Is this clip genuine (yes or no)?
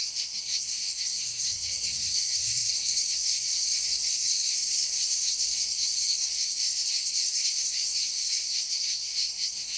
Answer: no